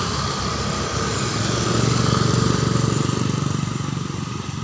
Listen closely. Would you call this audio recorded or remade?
recorded